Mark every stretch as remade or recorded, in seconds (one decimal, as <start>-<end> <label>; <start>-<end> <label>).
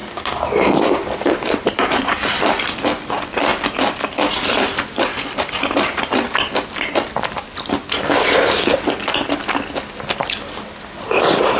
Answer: 0.0-3.1 remade; 3.1-11.6 recorded